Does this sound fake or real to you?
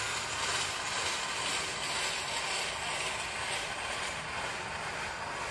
real